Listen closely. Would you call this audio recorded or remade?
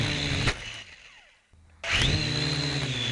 recorded